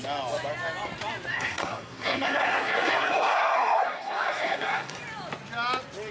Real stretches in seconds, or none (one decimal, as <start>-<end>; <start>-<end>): 0.0-1.3; 5.0-6.1

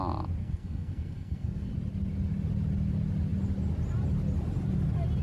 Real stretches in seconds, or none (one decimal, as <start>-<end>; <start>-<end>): 0.0-0.4; 1.7-5.2

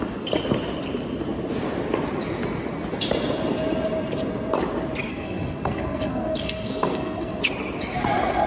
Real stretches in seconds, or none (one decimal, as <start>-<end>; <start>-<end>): 0.0-5.1; 7.4-8.5

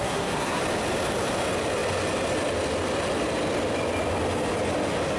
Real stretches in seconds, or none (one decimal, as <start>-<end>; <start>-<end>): 0.6-5.2

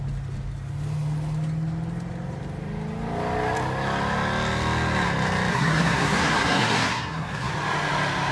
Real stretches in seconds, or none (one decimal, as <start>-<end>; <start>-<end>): 0.0-5.5; 7.5-8.3

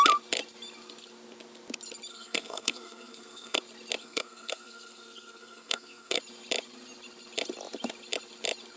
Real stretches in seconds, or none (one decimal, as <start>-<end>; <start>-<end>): 0.0-2.1; 3.6-4.0; 6.2-8.8